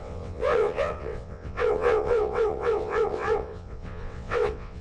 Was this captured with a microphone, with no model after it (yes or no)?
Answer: no